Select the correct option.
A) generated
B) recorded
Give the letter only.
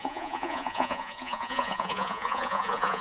A